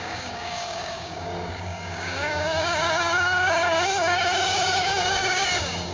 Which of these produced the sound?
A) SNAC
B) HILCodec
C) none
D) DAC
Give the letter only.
D